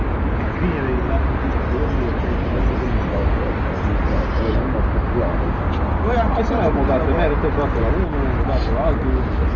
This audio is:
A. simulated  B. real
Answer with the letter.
B